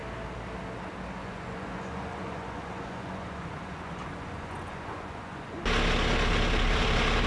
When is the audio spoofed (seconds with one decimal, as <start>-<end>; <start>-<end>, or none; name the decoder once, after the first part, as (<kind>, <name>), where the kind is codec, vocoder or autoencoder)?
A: 1.2-5.6 (vocoder, Vocos)